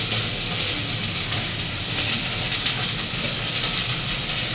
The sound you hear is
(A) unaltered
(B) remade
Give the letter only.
A